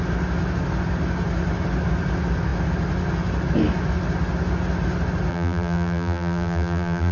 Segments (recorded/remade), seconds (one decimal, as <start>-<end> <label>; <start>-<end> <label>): 0.0-5.3 recorded; 5.3-7.1 remade